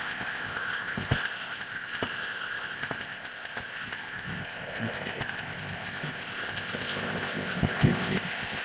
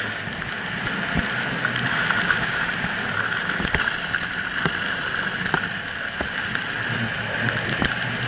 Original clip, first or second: second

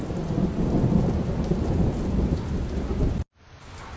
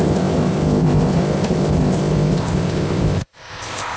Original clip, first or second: first